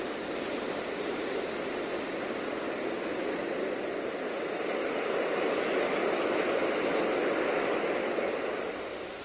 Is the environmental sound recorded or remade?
recorded